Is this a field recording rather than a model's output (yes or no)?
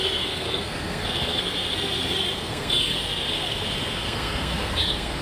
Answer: no